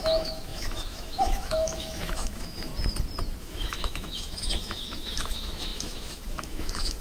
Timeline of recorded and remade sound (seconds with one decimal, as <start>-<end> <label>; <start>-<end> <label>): 0.0-2.7 remade; 2.7-3.4 recorded; 3.4-7.0 remade

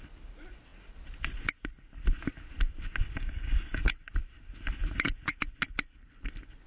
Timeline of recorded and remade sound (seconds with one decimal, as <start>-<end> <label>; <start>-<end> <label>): 0.0-3.0 recorded; 3.0-3.8 remade; 3.8-6.7 recorded

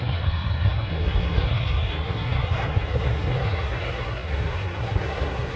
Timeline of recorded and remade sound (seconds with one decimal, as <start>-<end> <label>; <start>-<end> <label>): 0.0-5.6 remade

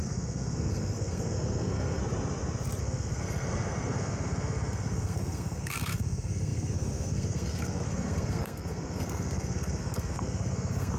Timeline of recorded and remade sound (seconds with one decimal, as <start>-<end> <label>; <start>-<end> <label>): 0.0-2.0 remade; 2.0-2.8 recorded; 2.8-11.0 remade